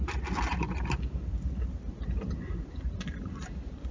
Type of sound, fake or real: real